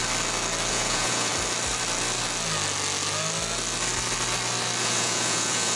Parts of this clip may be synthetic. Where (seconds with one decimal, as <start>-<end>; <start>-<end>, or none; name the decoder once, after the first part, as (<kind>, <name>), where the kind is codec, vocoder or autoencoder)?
0.7-1.3 (vocoder, Vocos); 4.8-5.8